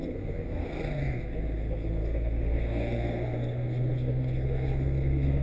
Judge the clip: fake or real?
fake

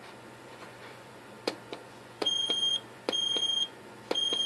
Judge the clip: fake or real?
fake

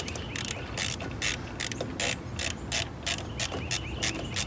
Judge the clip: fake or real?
real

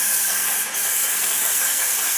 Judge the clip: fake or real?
fake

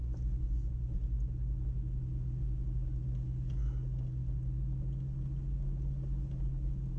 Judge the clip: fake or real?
real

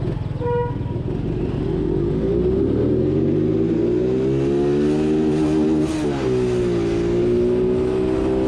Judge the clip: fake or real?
real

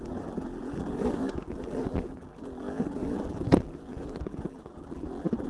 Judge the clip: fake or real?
fake